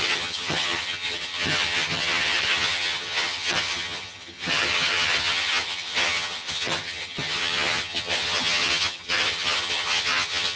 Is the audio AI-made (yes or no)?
yes